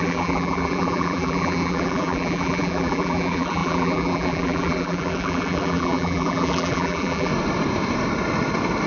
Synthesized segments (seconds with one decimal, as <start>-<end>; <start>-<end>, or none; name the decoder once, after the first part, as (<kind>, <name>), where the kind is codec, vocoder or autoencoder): 0.0-7.3 (vocoder, BigVGAN v2)